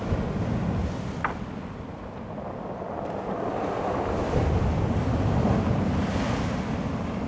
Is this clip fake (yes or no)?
no